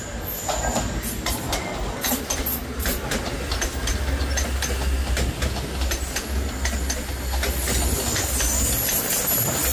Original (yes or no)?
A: yes